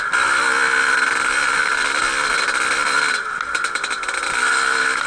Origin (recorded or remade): recorded